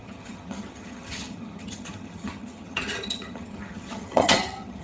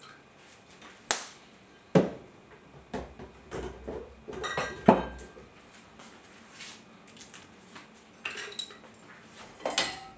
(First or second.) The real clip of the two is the second